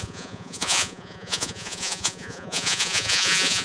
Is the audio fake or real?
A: fake